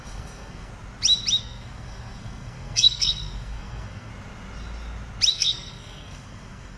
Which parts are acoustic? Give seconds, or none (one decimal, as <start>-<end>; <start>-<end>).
0.7-1.4; 4.1-5.3